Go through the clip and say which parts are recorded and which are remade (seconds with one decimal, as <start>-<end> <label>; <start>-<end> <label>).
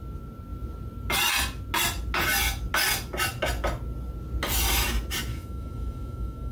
0.0-5.3 recorded; 5.3-6.5 remade